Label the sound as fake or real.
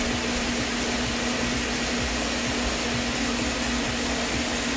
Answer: real